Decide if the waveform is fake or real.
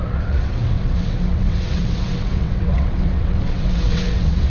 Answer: fake